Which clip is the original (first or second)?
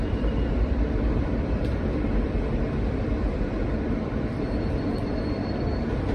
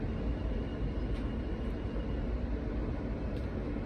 second